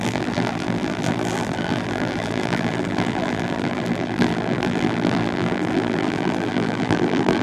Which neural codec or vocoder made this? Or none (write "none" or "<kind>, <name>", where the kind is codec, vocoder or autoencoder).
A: vocoder, BigVGAN v2